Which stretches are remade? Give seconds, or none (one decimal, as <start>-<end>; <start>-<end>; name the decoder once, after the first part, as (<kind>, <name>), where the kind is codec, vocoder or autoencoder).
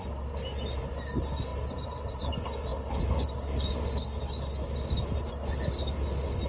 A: 1.5-2.2 (vocoder, BigVGAN v2)